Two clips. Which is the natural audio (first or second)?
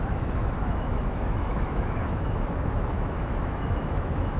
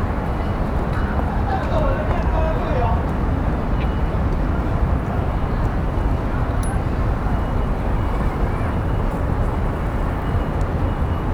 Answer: second